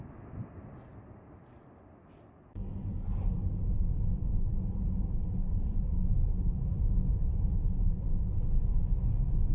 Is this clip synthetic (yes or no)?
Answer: no